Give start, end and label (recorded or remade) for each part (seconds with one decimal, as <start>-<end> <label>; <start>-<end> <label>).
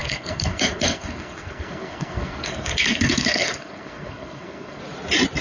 0.0-4.8 remade; 4.8-5.4 recorded